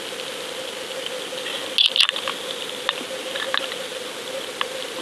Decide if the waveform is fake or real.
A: real